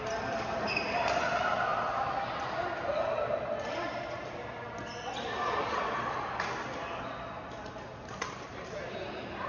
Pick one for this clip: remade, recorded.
recorded